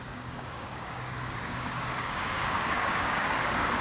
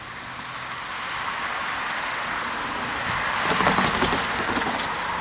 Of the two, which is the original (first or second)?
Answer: second